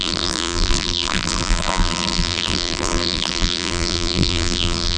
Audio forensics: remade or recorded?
remade